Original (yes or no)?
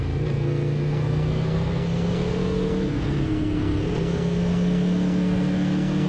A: no